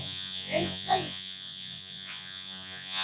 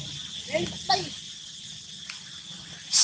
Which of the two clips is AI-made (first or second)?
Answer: first